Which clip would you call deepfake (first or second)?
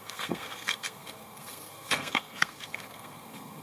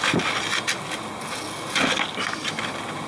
first